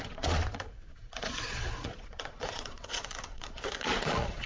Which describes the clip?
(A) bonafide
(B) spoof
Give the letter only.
B